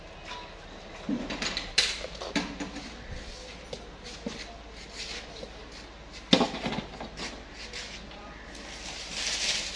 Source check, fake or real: real